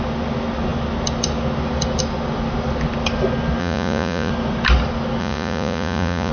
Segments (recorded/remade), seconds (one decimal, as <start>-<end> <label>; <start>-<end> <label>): 0.0-3.6 recorded; 3.6-4.3 remade; 4.3-5.2 recorded; 5.2-6.3 remade